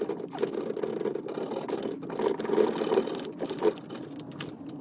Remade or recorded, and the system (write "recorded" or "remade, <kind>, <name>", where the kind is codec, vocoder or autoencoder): recorded